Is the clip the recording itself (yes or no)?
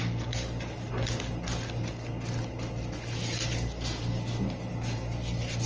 yes